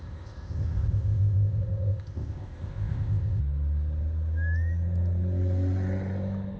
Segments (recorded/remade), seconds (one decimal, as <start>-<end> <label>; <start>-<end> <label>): 0.0-3.4 remade; 3.4-6.6 recorded